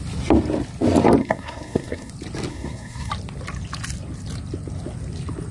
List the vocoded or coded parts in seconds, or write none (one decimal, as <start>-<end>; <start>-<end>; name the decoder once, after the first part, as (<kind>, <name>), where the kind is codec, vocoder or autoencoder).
1.2-2.1 (codec, SNAC); 2.5-3.1